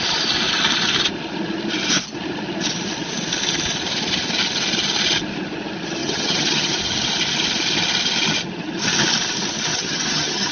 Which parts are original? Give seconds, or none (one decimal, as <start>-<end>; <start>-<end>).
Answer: 0.0-6.0; 6.7-9.7

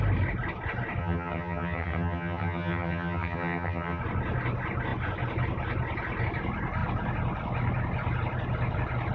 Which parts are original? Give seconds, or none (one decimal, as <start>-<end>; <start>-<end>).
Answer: 0.0-1.0; 4.0-9.1

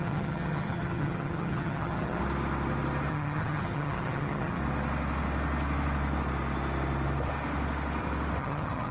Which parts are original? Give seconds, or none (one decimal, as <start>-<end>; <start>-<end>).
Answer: 2.2-3.1; 4.6-8.4